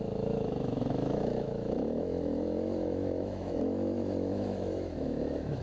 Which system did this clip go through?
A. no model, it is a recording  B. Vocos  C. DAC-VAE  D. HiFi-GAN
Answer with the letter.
C